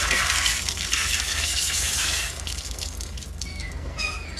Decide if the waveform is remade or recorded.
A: remade